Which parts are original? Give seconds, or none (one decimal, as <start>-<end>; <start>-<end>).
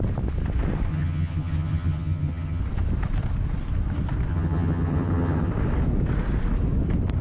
0.0-0.9; 2.6-4.3; 5.5-7.2